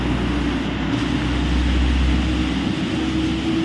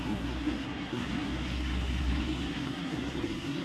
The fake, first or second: second